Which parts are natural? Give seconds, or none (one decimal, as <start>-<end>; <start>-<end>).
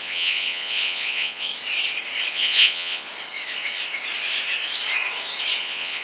1.5-2.3; 3.1-5.6